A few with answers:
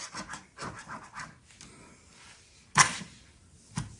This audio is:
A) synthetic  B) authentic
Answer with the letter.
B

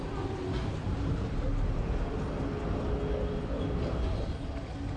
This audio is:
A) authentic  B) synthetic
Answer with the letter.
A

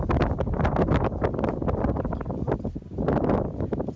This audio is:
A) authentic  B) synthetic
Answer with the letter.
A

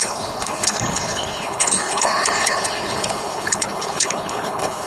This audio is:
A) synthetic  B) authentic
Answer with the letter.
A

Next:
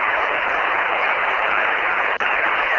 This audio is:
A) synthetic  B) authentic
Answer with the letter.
A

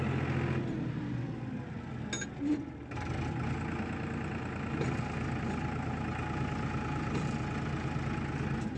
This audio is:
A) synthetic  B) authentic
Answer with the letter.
B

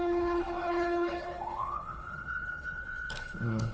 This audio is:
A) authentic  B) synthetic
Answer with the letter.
B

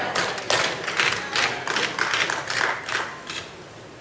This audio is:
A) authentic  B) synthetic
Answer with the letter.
A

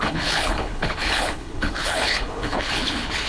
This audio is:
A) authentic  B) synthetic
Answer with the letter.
B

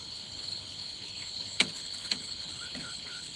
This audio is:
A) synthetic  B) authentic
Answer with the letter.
A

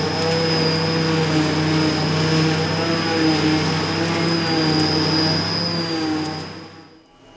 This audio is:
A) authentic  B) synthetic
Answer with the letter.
A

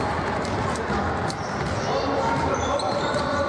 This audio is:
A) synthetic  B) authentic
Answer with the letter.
B